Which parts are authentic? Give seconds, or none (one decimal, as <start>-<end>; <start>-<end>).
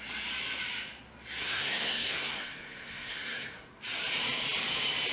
0.0-1.4; 3.8-5.1